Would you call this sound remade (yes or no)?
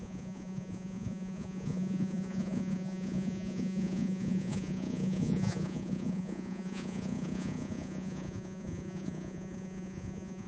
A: yes